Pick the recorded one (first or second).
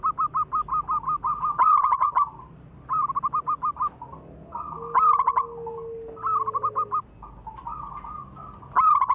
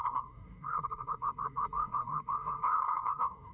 first